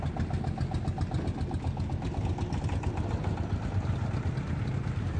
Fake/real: real